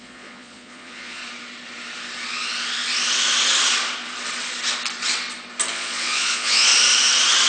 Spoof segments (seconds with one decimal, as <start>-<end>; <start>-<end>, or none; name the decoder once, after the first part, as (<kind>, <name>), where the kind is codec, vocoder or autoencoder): 0.0-1.2 (vocoder, Vocos); 5.7-6.7